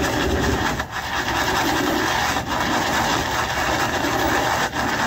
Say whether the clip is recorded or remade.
recorded